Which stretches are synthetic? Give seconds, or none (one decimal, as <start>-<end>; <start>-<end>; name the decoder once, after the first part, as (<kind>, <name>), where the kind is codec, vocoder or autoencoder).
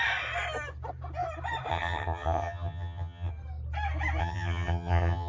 1.7-3.3 (vocoder, HiFi-GAN); 4.2-5.3